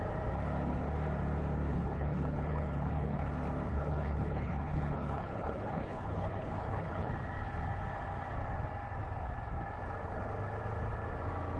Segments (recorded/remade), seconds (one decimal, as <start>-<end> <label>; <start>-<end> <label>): 0.0-1.7 recorded; 1.7-3.3 remade; 3.3-3.7 recorded; 3.7-7.1 remade; 7.1-11.6 recorded